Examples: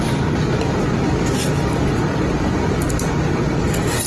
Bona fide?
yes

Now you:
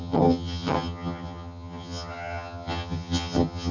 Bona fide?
no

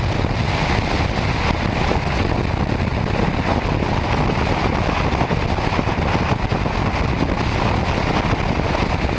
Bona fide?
yes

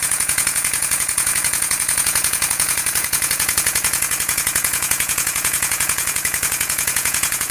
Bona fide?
no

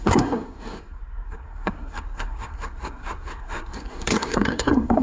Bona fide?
no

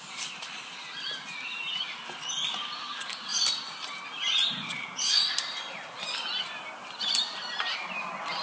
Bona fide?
yes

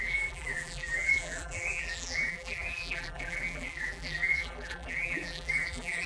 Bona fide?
no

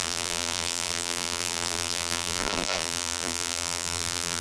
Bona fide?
no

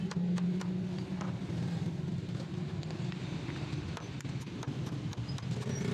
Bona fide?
yes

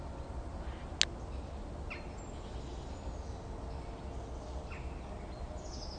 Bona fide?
yes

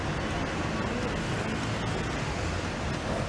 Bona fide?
yes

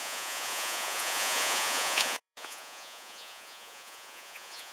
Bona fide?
no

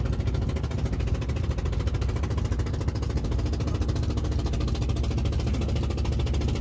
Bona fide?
yes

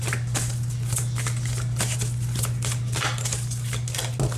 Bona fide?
yes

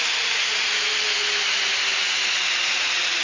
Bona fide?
yes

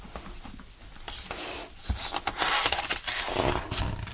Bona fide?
yes